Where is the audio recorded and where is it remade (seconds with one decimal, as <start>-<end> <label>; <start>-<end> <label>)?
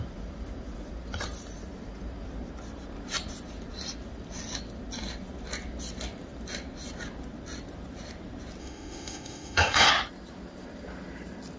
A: 0.0-8.6 recorded; 8.6-9.9 remade; 9.9-11.6 recorded